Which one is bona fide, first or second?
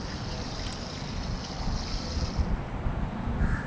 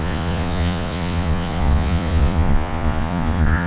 first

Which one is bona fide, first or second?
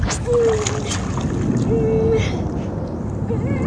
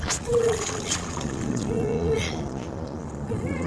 first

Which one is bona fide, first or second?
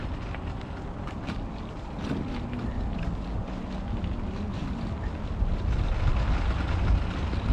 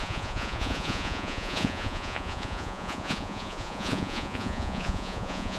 first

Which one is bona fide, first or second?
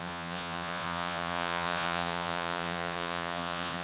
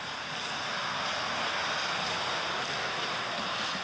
second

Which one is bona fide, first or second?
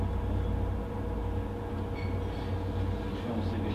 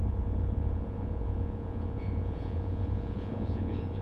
first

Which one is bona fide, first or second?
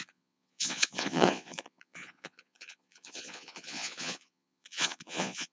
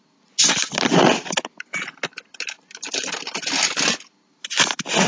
second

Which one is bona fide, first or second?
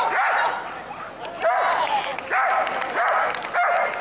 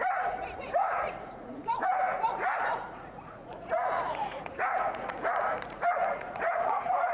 first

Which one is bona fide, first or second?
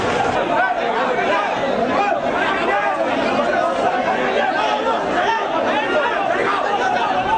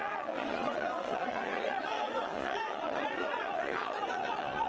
first